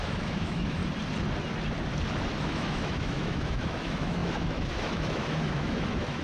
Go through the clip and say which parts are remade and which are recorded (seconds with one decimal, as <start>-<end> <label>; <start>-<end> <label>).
0.0-0.8 remade; 0.8-2.4 recorded; 2.4-6.2 remade

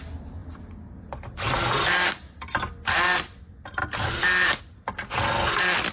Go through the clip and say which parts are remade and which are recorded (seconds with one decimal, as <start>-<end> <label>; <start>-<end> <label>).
0.0-5.9 recorded

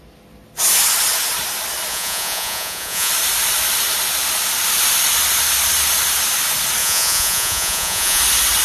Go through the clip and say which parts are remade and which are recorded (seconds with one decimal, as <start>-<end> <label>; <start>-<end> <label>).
0.0-1.9 recorded; 1.9-3.1 remade; 3.1-6.8 recorded; 6.8-8.2 remade; 8.2-8.6 recorded

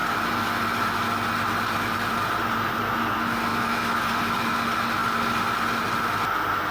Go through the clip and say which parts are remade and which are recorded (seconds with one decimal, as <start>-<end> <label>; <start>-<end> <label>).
0.0-3.5 recorded; 3.5-4.2 remade; 4.2-6.7 recorded